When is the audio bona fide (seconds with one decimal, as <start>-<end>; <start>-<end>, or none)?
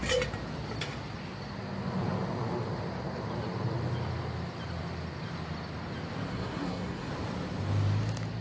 0.0-6.3; 7.1-8.4